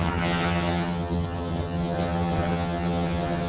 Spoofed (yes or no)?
yes